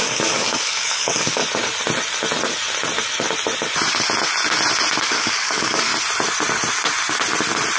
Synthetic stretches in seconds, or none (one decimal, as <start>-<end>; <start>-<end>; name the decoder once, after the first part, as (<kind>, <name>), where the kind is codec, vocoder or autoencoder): 0.0-1.4 (codec, DAC); 5.0-5.9